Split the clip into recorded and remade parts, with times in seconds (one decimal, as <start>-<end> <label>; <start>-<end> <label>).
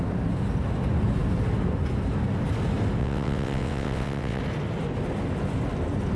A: 0.0-3.0 recorded; 3.0-4.4 remade; 4.4-6.2 recorded